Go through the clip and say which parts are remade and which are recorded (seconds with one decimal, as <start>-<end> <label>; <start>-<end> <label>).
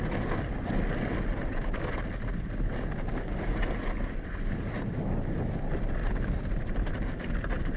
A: 0.0-6.0 recorded; 6.0-7.8 remade